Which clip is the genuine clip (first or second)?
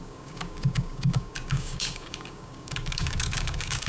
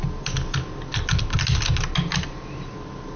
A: second